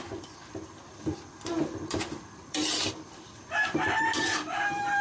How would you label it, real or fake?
fake